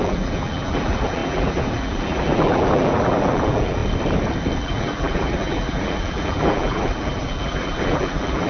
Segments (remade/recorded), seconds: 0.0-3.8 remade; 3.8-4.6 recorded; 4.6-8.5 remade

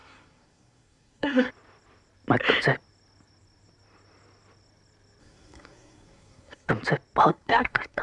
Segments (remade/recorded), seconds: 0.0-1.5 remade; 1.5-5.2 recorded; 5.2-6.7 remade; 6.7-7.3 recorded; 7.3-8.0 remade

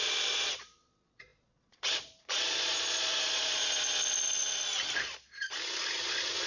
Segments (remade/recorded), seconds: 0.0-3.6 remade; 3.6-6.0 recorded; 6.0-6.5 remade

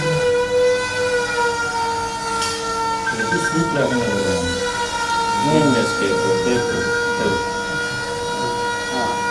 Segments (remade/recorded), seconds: 0.0-2.3 recorded; 2.3-4.6 remade; 4.6-9.3 recorded

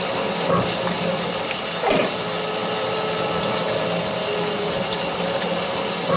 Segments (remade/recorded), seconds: 0.0-6.2 recorded

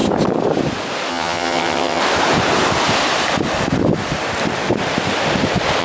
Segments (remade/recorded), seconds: 0.0-1.1 recorded; 1.1-2.0 remade; 2.0-5.8 recorded

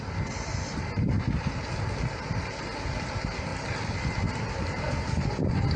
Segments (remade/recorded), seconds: 0.0-5.8 recorded

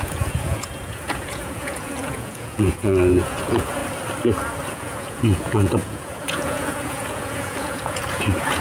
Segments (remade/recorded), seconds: 0.0-3.8 remade; 3.8-4.7 recorded; 4.7-8.6 remade